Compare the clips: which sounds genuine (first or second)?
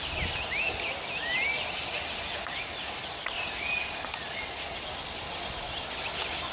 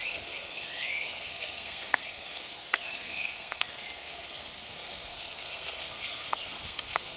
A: first